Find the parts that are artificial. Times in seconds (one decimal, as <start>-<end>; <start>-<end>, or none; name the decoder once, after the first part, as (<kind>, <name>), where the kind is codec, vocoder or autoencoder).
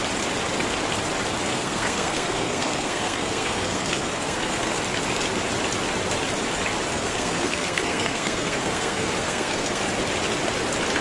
1.5-4.8 (codec, SNAC); 6.9-9.8